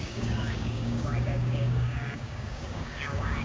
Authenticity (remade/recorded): remade